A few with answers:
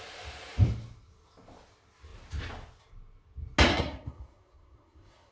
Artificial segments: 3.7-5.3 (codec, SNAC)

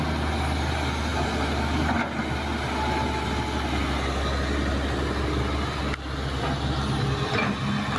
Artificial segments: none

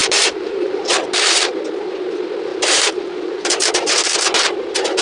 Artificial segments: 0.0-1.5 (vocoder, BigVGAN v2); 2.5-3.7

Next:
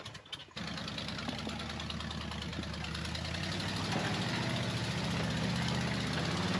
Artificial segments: none

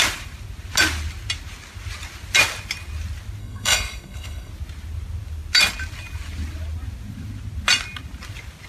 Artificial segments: 3.4-4.5 (codec, SNAC)

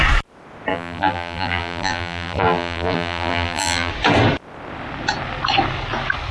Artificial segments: 0.7-3.9 (vocoder, BigVGAN v2)